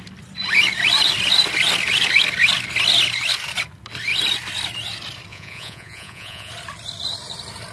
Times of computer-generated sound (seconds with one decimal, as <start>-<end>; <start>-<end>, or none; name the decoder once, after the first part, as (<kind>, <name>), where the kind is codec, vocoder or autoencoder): 5.3-6.5 (vocoder, Vocos)